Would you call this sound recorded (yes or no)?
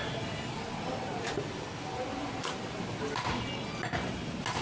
yes